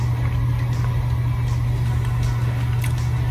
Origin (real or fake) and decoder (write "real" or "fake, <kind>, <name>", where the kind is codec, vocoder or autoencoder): real